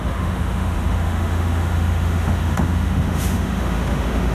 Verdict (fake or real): fake